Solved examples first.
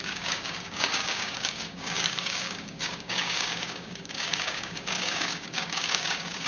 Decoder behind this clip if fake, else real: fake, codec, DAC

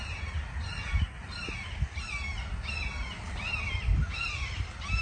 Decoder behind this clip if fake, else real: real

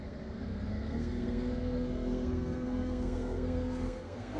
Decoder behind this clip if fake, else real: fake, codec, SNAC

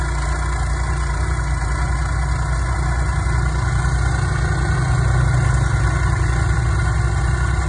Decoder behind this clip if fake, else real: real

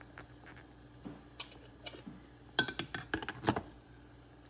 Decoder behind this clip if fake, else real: real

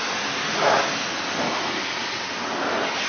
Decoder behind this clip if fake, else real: real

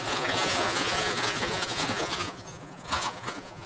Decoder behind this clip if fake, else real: fake, vocoder, Vocos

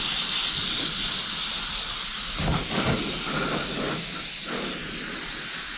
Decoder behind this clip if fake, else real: real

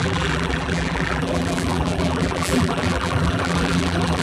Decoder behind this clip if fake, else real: fake, vocoder, BigVGAN v2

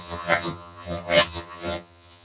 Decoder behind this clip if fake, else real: fake, vocoder, HiFi-GAN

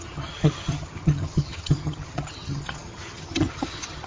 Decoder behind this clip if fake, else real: fake, vocoder, HiFi-GAN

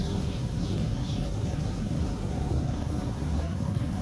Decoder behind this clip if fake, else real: fake, codec, SNAC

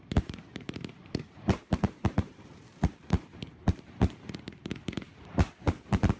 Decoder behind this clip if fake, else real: fake, vocoder, BigVGAN v2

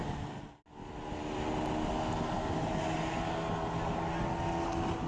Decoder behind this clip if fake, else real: real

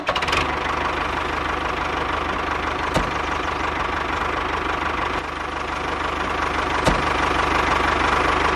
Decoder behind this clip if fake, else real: real